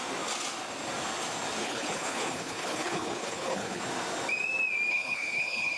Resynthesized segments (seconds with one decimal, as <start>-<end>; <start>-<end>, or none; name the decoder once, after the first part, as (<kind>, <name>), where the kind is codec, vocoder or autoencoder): 1.6-3.8 (codec, HILCodec); 4.9-5.8